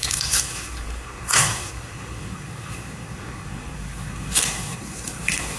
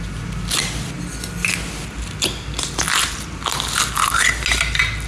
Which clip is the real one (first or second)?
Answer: second